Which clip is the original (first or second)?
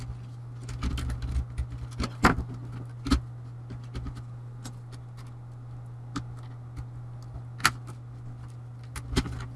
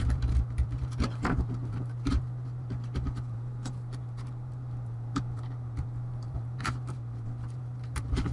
first